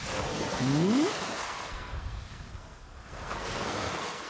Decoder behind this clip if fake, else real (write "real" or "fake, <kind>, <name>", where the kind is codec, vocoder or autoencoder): fake, codec, SNAC